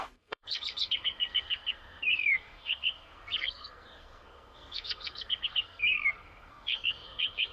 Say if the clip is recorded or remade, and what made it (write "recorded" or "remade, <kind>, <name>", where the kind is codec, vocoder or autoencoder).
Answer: remade, codec, SNAC